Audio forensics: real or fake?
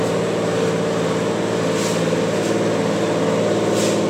real